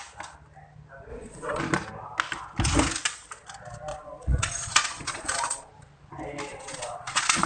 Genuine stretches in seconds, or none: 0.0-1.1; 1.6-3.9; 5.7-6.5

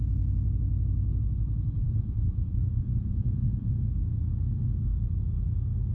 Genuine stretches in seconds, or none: 0.0-1.8; 3.7-5.9

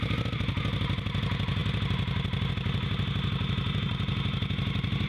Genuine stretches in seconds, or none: 0.0-5.1